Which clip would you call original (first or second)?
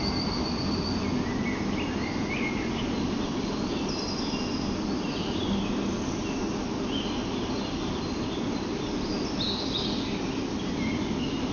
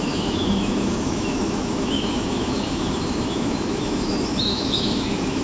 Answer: first